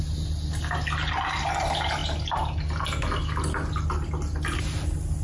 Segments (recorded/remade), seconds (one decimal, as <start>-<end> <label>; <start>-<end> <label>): 0.0-5.2 recorded